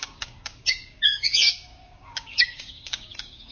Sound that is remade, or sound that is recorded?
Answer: remade